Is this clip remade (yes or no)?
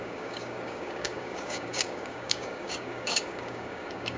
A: yes